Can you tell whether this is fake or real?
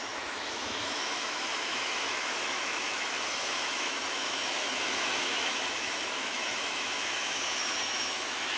fake